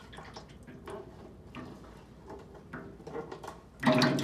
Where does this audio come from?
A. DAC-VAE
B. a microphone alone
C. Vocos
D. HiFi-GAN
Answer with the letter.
B